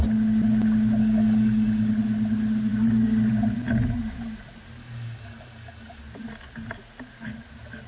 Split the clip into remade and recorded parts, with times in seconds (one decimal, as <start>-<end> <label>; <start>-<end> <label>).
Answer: 0.0-1.0 recorded; 1.0-1.9 remade; 1.9-4.8 recorded; 4.8-6.0 remade; 6.0-7.9 recorded